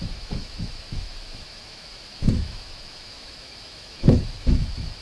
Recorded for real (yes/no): no